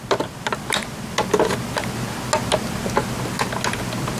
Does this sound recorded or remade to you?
recorded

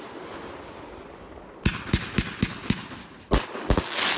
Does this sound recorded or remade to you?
recorded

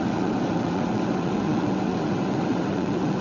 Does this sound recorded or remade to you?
remade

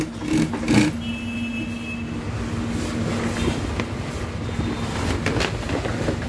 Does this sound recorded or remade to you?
recorded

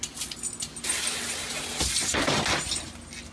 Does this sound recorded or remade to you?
recorded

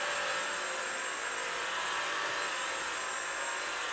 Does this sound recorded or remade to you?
recorded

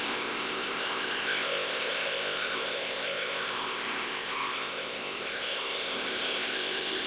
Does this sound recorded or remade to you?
remade